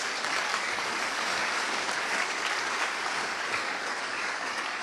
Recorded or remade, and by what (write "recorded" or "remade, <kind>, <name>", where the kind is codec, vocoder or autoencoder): remade, codec, DAC